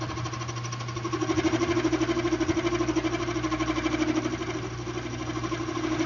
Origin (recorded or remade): recorded